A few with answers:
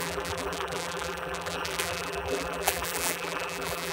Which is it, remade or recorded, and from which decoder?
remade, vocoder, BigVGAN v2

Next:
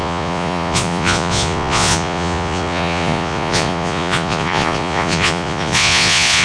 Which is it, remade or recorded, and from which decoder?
remade, vocoder, Vocos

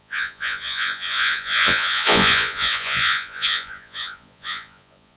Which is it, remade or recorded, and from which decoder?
remade, vocoder, Vocos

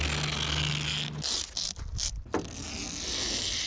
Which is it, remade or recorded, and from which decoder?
recorded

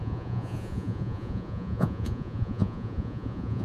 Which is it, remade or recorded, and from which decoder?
remade, vocoder, Vocos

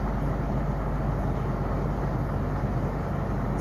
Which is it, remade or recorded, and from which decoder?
recorded